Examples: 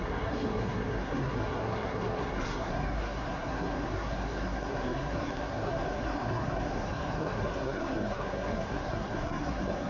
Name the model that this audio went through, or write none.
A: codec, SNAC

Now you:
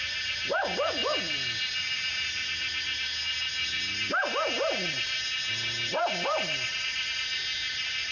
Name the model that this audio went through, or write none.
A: none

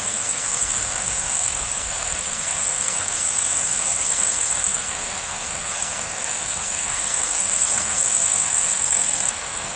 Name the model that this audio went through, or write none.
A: codec, SNAC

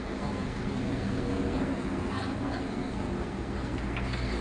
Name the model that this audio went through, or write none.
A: codec, SNAC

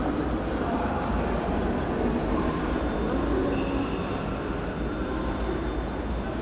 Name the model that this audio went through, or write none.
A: none